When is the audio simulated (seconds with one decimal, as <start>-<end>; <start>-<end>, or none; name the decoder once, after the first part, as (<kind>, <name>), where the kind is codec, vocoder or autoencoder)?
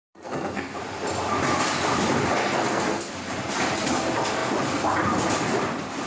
0.0-0.8 (codec, SNAC); 2.4-3.1